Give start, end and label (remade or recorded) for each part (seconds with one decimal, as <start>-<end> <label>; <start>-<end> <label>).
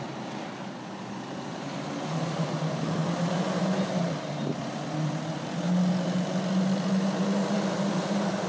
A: 0.0-8.5 recorded